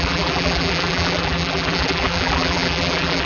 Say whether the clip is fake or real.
fake